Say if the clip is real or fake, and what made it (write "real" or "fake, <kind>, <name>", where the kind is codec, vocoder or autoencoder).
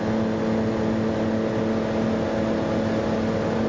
real